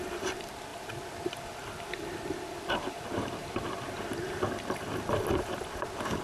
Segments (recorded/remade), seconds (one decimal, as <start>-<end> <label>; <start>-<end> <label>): 0.0-6.2 recorded